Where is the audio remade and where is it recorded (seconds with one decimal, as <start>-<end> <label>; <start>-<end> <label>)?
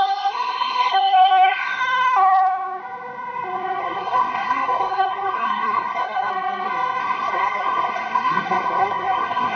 0.0-1.8 remade; 1.8-3.8 recorded; 3.8-6.3 remade; 6.3-7.0 recorded; 7.0-9.6 remade